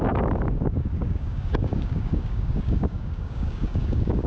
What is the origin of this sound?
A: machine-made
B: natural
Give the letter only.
A